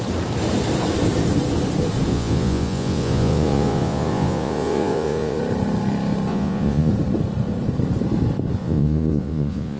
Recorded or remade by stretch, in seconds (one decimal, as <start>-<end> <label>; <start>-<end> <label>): 0.0-2.1 recorded; 2.1-5.4 remade; 5.4-6.3 recorded; 6.3-6.9 remade; 6.9-8.6 recorded; 8.6-9.8 remade